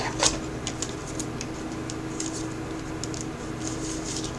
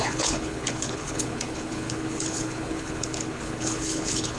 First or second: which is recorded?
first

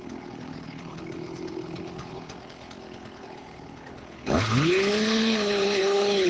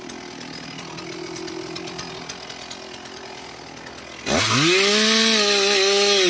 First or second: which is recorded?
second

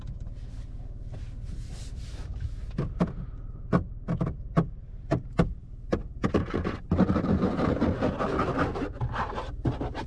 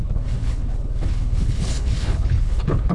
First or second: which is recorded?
first